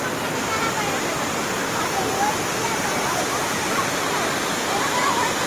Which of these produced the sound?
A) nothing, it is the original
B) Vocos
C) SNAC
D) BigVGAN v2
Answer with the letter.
A